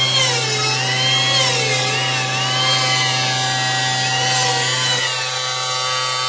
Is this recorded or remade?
recorded